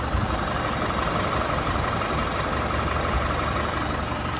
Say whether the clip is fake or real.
real